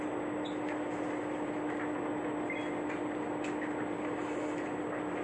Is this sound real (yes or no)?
yes